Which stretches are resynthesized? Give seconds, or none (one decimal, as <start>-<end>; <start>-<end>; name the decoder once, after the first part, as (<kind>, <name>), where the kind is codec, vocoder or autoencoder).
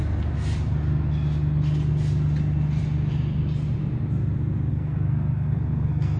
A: 4.7-6.2 (codec, SNAC)